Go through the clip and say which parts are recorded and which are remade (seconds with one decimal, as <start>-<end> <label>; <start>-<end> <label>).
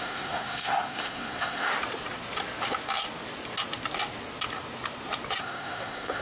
0.0-1.7 remade; 1.7-5.4 recorded; 5.4-6.2 remade